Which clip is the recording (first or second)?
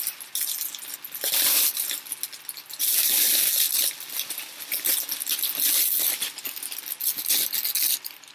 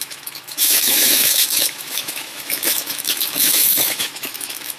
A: first